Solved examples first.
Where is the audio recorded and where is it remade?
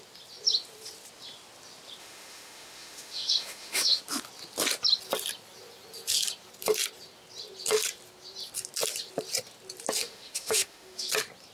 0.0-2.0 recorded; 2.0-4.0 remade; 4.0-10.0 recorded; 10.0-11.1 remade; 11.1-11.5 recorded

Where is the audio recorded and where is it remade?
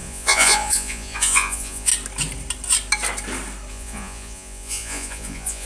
0.0-1.9 remade; 1.9-3.7 recorded; 3.7-5.7 remade